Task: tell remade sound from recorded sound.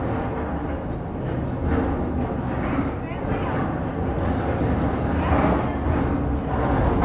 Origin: recorded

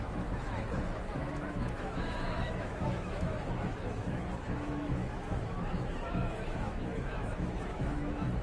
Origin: remade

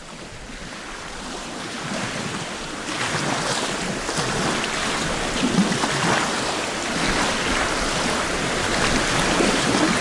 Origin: recorded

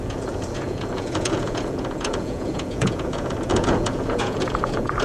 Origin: remade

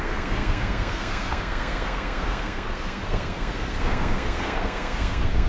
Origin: remade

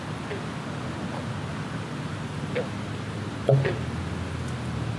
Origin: recorded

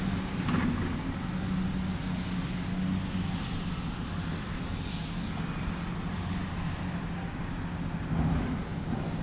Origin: recorded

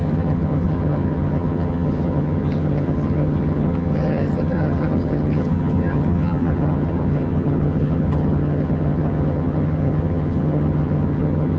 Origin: remade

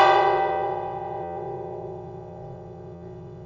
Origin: remade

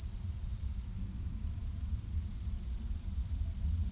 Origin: recorded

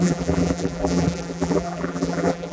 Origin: remade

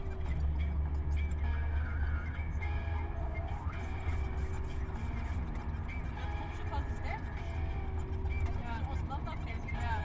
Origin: recorded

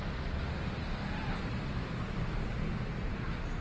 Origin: recorded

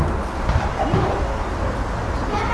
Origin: recorded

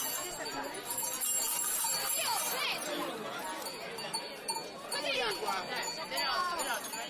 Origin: recorded